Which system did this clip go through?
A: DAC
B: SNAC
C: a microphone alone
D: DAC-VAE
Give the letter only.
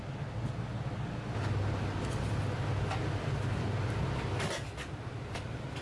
C